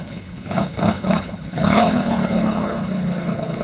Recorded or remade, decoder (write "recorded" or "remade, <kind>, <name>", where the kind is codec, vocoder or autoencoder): remade, codec, HILCodec